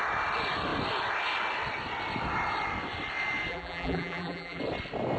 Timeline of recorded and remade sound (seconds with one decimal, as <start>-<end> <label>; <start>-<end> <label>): 0.0-3.5 recorded; 3.5-4.6 remade; 4.6-5.2 recorded